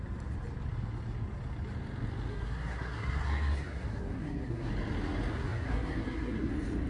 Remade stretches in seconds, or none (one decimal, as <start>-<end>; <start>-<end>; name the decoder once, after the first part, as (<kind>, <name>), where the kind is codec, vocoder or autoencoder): 2.3-4.7 (codec, SNAC); 5.3-6.5